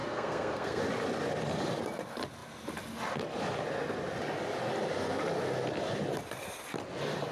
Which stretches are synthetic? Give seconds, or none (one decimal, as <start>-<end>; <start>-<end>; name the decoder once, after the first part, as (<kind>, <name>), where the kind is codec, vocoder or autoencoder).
0.0-0.8 (codec, SNAC)

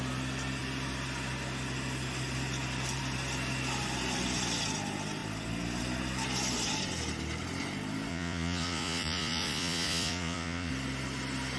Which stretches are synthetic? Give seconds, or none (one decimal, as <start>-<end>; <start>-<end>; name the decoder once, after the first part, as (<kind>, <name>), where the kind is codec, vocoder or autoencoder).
8.1-10.7 (vocoder, Vocos)

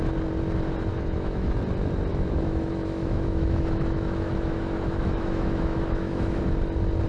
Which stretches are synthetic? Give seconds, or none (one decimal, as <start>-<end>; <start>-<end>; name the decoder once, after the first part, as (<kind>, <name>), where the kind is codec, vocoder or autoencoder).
0.9-1.6 (autoencoder, DAC-VAE); 2.1-6.4

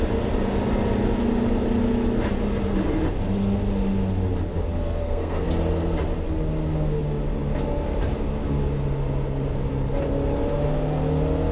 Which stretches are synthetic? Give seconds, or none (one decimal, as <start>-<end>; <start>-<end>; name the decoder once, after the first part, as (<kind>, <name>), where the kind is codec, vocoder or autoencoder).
5.0-5.5 (codec, SNAC)

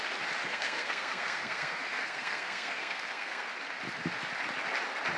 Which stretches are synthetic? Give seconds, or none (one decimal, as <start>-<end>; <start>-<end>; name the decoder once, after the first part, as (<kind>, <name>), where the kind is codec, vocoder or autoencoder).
0.4-3.5 (codec, SNAC)